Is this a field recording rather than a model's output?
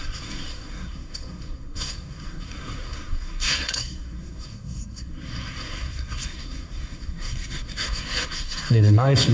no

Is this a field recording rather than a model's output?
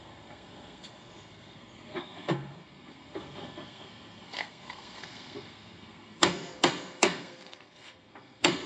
no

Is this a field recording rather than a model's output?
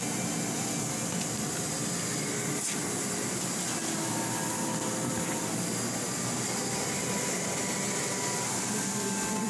yes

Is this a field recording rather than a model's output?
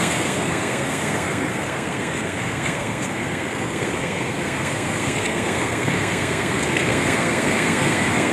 no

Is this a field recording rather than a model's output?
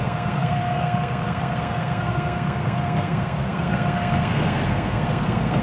no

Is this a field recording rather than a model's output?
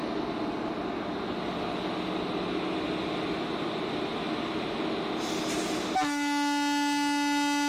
yes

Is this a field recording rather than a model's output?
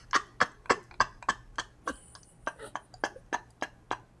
yes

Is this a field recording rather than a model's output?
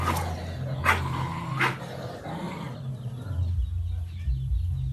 yes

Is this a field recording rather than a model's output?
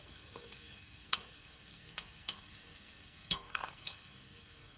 no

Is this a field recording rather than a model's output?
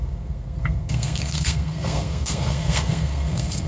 no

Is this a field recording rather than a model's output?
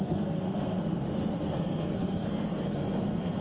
no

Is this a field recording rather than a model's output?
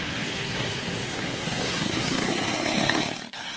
no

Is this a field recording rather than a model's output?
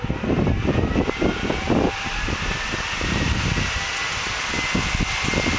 yes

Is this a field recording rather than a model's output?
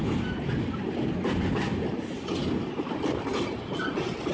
yes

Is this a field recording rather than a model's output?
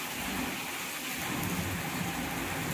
yes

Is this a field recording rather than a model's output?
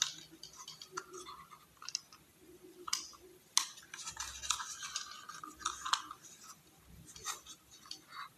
yes